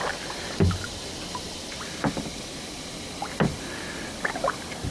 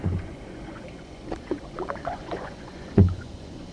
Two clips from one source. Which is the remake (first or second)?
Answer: second